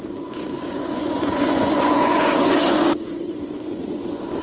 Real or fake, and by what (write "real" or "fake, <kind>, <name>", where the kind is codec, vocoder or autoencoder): fake, vocoder, Vocos